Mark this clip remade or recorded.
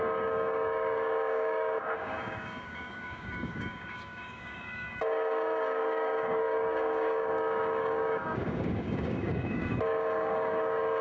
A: remade